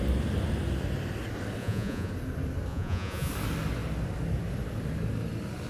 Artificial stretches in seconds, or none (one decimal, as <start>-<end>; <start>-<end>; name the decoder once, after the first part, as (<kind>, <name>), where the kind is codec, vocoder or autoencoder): 1.6-2.1 (vocoder, Vocos); 2.7-3.3